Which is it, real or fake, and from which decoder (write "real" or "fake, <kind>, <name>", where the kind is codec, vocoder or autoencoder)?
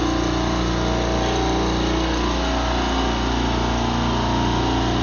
real